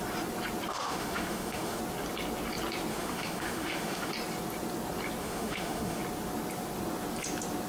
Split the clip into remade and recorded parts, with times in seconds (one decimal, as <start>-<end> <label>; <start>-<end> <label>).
0.0-0.7 recorded; 0.7-1.8 remade; 1.8-2.9 recorded; 2.9-4.1 remade; 4.1-5.2 recorded; 5.2-6.0 remade; 6.0-7.7 recorded